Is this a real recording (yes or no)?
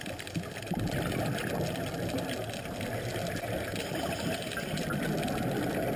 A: yes